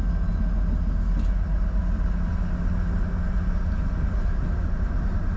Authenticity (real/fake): real